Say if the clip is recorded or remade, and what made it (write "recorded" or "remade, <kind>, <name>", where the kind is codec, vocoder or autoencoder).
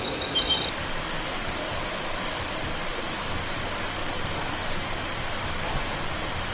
recorded